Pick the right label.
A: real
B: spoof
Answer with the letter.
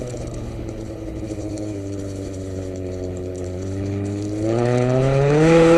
B